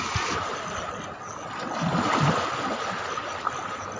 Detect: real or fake real